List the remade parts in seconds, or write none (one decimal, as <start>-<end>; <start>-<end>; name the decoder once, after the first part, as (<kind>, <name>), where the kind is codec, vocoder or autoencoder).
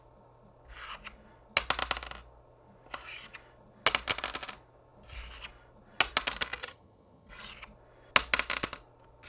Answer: 6.6-7.3 (vocoder, HiFi-GAN)